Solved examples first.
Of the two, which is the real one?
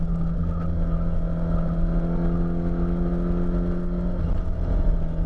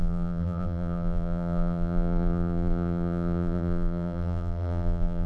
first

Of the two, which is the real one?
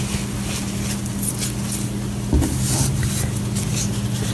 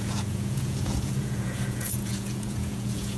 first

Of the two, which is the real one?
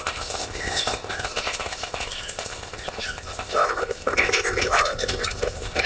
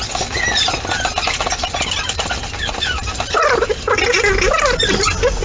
second